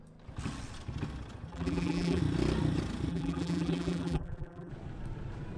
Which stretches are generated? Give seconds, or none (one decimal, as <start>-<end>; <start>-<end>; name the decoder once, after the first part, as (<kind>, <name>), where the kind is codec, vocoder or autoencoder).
1.5-2.2 (vocoder, BigVGAN v2); 3.1-4.7